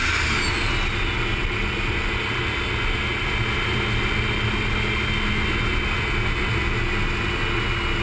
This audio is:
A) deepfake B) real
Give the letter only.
B